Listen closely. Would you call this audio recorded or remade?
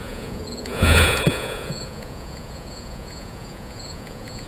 remade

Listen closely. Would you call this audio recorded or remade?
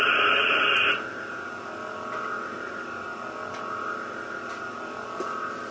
recorded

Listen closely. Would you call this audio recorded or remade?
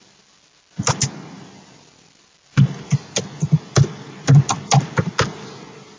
recorded